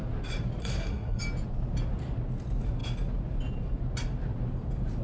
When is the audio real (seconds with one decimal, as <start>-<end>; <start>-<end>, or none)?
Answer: 0.0-0.6; 1.2-5.0